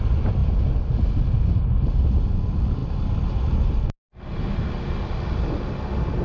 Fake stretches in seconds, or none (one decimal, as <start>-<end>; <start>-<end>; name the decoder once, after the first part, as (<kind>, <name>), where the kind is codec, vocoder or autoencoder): none